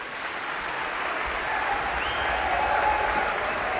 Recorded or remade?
recorded